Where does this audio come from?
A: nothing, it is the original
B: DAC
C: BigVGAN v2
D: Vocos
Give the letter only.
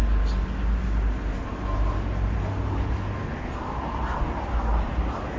A